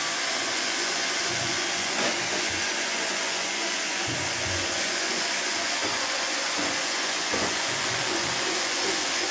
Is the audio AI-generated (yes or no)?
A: yes